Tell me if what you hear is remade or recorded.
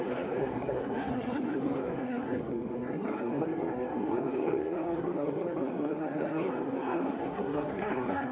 remade